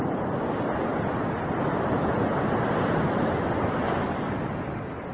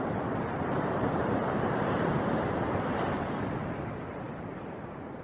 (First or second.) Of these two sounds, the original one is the first